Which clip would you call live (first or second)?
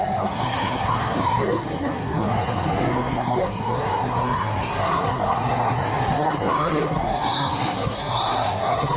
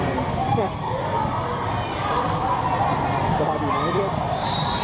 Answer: second